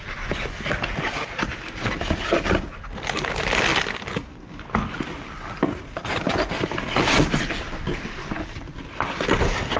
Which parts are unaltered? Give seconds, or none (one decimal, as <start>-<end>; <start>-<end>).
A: 0.0-9.8